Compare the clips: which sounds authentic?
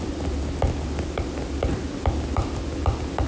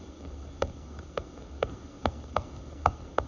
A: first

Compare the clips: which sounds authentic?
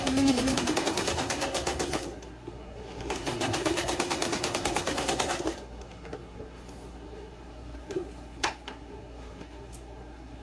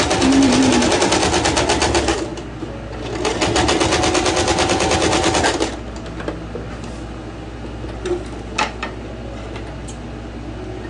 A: second